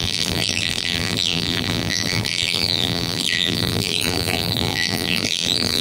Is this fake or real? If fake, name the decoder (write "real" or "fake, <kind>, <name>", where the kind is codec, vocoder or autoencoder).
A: fake, vocoder, BigVGAN v2